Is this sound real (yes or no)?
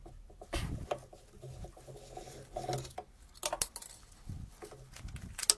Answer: yes